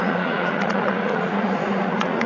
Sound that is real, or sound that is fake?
fake